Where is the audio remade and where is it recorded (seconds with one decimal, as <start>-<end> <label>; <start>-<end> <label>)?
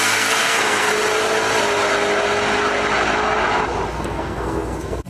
0.0-0.9 remade; 0.9-4.0 recorded; 4.0-5.1 remade